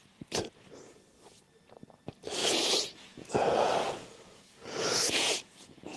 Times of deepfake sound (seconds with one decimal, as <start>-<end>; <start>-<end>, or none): 2.4-6.0